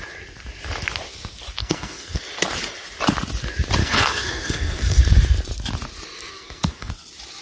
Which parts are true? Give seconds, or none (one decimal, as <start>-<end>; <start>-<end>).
0.0-1.6; 2.2-3.8; 5.0-6.3; 6.9-7.4